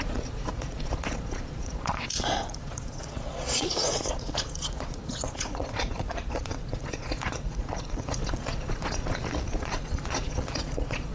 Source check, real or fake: fake